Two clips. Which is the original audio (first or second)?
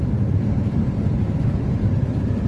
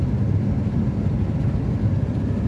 second